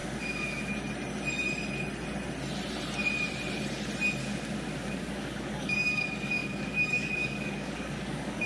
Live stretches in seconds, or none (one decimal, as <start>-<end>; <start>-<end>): 0.0-4.8